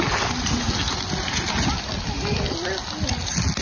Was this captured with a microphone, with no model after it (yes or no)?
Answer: yes